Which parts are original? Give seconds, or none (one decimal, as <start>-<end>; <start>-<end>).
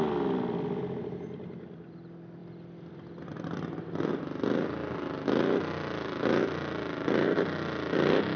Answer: 0.0-8.4